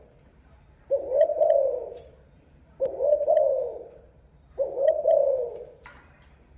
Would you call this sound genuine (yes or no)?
no